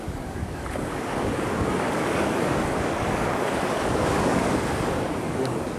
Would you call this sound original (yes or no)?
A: no